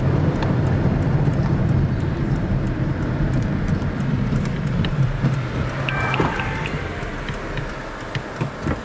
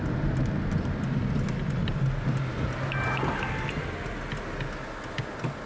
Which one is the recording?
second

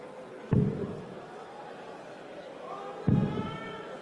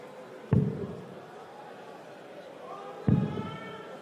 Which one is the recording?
first